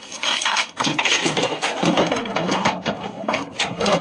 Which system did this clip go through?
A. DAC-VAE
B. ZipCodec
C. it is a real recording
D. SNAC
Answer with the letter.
D